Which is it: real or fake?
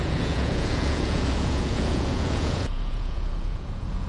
fake